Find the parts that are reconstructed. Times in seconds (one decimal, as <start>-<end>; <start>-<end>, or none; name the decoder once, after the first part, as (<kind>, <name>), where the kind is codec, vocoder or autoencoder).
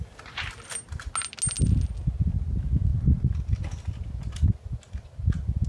none